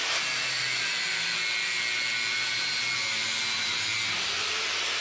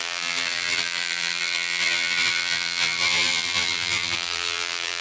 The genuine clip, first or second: first